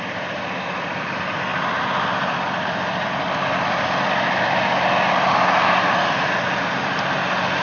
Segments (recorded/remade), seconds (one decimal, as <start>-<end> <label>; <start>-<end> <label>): 0.0-1.5 remade; 1.5-5.9 recorded; 5.9-7.6 remade